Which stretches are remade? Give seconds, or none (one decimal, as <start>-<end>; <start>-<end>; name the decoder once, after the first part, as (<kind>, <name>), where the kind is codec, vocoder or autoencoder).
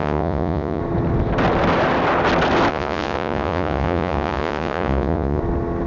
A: 0.0-0.8 (vocoder, Vocos); 2.7-5.4